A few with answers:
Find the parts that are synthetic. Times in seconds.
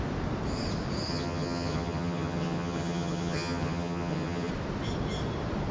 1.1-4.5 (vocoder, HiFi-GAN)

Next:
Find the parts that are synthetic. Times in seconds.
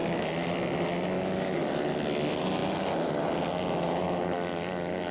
none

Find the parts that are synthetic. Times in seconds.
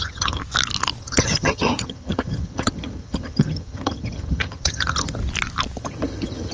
0.0-0.4 (vocoder, HiFi-GAN); 1.0-5.2; 5.8-6.5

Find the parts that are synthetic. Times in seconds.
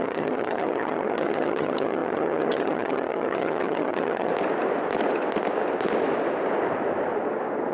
0.0-4.3 (vocoder, HiFi-GAN)